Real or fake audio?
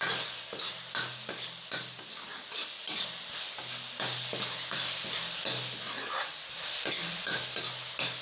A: real